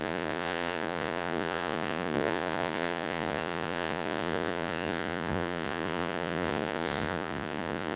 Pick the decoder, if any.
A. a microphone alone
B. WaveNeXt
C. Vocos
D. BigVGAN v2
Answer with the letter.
C